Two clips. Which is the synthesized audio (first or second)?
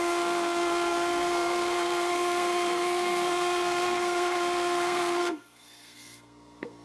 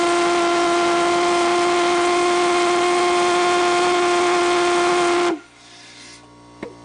first